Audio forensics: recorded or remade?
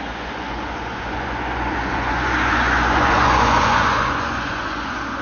remade